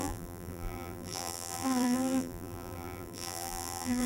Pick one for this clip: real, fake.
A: fake